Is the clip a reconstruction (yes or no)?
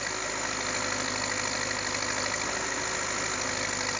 no